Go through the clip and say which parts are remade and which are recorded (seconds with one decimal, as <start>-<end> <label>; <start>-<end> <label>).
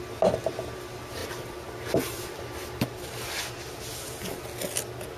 0.0-5.2 recorded